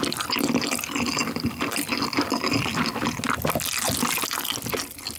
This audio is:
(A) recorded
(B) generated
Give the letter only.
A